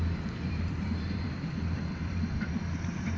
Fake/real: fake